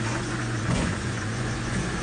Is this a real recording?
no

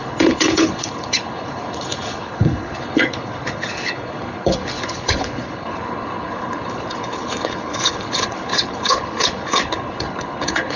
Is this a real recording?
no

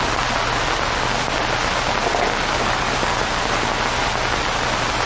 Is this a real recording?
yes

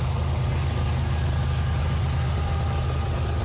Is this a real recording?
yes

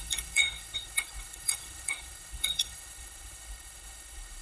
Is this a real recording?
no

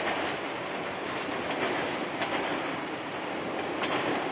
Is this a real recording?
yes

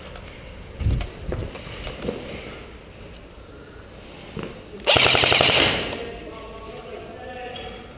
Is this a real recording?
yes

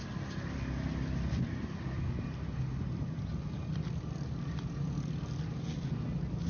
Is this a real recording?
yes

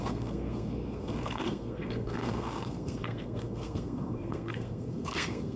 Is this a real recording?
no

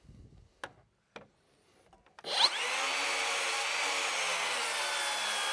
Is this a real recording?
yes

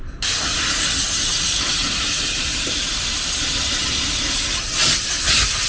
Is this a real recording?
no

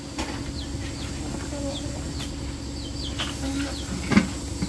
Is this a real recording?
yes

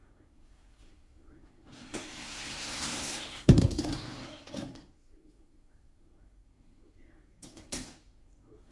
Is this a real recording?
no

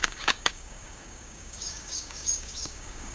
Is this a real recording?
no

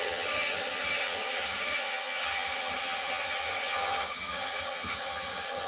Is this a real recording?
no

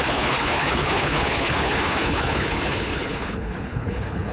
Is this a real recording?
no